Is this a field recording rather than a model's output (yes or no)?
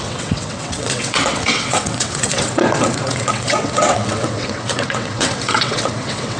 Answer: no